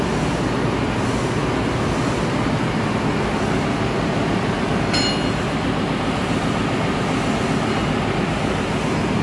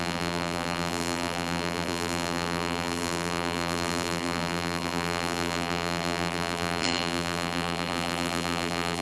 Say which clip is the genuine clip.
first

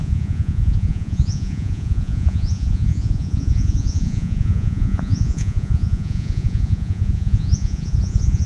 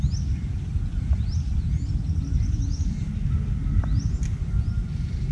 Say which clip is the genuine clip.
second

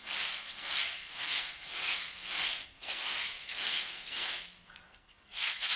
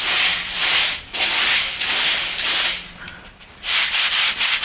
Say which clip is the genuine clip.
second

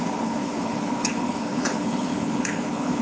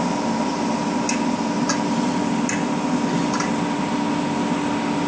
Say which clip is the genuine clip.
second